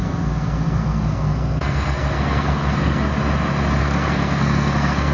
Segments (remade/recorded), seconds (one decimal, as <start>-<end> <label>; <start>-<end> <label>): 0.0-3.1 remade; 3.1-3.8 recorded; 3.8-5.1 remade